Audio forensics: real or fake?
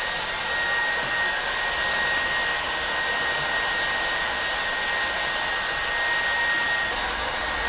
real